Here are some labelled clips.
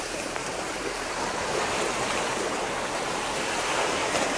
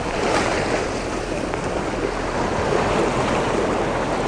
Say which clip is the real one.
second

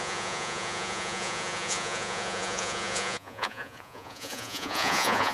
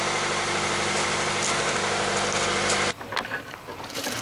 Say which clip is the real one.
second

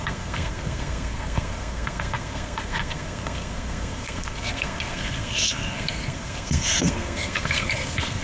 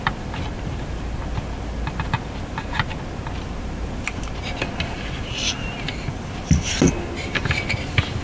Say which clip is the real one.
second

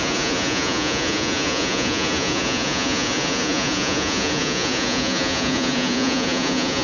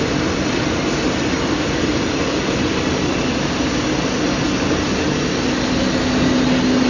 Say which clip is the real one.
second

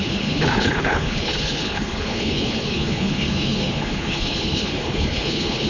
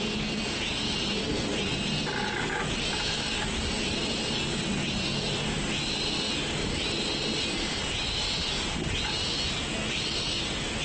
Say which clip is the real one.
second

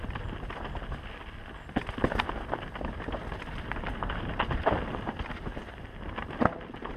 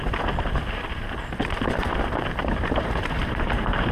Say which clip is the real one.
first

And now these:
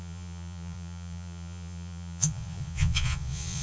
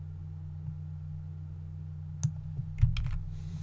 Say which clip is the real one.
second